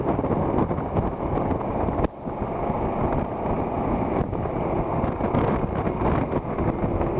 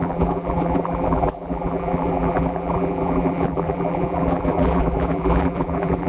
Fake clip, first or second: second